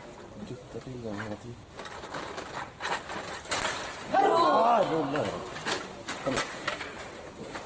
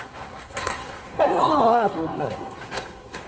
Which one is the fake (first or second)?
second